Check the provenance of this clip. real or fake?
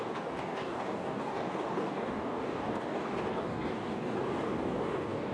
fake